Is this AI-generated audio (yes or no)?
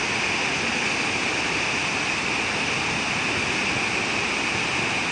no